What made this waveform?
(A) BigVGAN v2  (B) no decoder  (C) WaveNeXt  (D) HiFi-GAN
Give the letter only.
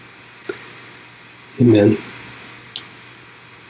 B